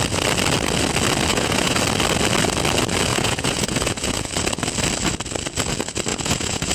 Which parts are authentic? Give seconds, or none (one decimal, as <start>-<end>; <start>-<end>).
0.0-1.3; 1.8-3.1; 4.3-6.1